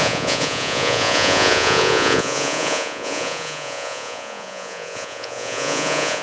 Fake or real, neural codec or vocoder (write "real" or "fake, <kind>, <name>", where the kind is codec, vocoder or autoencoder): fake, vocoder, Vocos